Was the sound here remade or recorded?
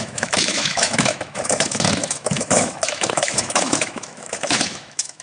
remade